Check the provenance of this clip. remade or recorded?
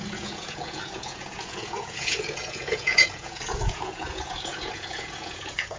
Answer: remade